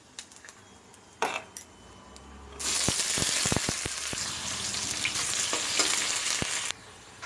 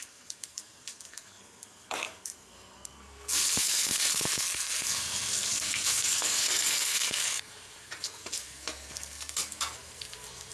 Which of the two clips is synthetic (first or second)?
second